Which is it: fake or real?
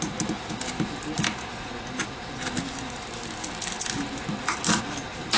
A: real